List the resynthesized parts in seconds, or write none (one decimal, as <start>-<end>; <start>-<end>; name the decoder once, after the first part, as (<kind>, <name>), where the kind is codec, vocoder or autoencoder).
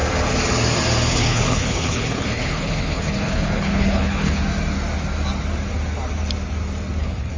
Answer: 1.1-4.4 (codec, HILCodec); 7.0-7.4